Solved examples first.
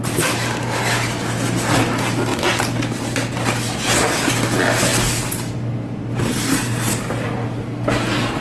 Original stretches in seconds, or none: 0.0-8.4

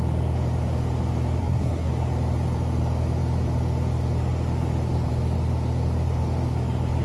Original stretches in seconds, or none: 0.0-1.4; 1.9-7.0

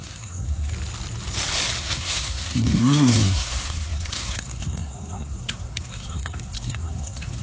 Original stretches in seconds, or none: 0.7-1.8